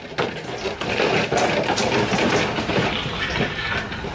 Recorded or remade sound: recorded